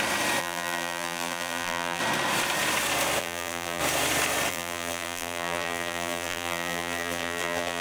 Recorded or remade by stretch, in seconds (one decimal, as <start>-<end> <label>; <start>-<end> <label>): 0.0-0.4 recorded; 0.4-2.0 remade; 2.0-3.2 recorded; 3.2-3.8 remade; 3.8-4.5 recorded; 4.5-7.8 remade